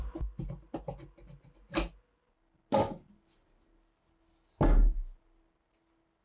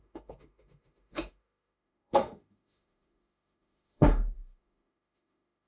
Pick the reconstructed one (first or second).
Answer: second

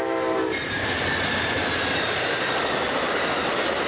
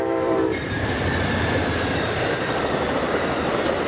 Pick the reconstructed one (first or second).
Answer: second